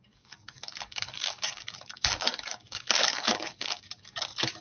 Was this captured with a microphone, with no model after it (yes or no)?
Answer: no